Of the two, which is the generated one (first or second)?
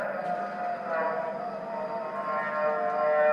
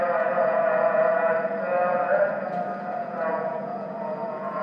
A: second